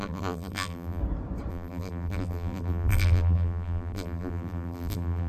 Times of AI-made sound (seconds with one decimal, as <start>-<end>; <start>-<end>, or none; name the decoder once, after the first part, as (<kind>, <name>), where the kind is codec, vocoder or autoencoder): 0.0-1.0 (vocoder, BigVGAN v2); 1.5-5.3

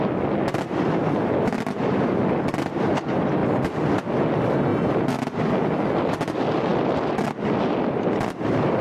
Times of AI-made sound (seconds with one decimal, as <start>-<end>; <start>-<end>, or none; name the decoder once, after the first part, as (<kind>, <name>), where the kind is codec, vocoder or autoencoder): 3.4-3.9 (vocoder, BigVGAN v2)

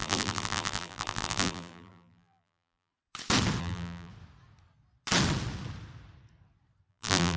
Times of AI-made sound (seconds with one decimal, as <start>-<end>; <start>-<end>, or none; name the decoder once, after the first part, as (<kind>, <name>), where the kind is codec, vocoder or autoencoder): 0.0-2.9 (vocoder, BigVGAN v2); 3.6-4.1; 6.9-7.4

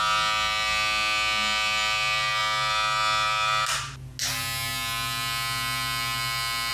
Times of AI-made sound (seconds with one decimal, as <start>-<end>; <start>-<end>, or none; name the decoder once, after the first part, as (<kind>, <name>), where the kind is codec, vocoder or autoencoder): none

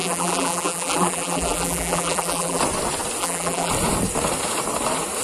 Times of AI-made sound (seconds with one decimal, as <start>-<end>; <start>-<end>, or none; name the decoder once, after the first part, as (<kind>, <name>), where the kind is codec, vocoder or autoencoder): 0.0-2.6 (vocoder, BigVGAN v2); 3.2-3.7